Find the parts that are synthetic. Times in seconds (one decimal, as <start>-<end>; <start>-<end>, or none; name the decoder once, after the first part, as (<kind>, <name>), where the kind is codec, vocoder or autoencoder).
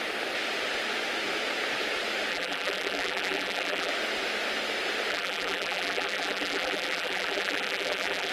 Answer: 2.3-3.9 (vocoder, BigVGAN v2); 5.1-8.3